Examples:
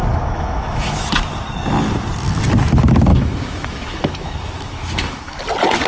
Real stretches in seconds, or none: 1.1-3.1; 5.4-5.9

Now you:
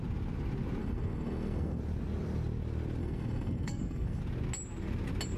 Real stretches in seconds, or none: 0.0-0.8; 1.8-3.0; 4.2-5.4